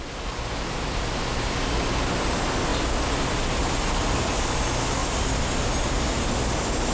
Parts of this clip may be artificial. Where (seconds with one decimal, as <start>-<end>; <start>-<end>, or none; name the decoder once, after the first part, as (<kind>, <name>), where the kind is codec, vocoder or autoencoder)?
2.7-3.9 (vocoder, BigVGAN v2); 5.0-5.6

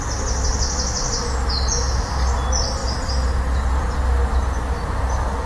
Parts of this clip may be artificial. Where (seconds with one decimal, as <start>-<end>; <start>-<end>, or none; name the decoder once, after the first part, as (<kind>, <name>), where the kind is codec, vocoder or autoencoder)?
none

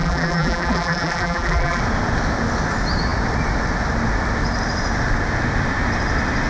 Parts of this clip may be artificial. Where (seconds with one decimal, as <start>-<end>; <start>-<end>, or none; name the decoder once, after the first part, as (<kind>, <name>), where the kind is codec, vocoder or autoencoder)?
0.0-1.8 (vocoder, BigVGAN v2)

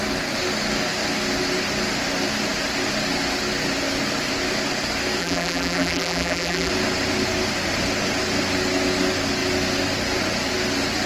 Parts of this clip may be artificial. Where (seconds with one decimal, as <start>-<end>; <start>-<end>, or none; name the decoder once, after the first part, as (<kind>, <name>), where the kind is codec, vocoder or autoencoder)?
5.2-6.7 (vocoder, BigVGAN v2)

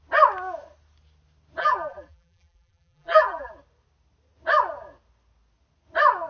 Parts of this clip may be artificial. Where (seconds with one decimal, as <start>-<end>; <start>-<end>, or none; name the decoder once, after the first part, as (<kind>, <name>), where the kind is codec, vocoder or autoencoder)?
1.6-3.5 (vocoder, BigVGAN v2)

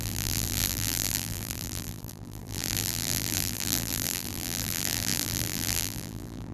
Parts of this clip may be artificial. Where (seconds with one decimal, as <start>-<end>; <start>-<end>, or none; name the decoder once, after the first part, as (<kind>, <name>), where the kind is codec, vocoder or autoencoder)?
0.0-6.5 (vocoder, BigVGAN v2)

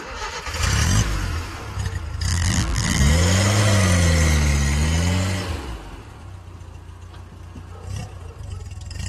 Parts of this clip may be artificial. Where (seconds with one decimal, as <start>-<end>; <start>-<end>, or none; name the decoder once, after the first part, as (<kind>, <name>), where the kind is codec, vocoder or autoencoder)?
2.3-3.0 (vocoder, BigVGAN v2)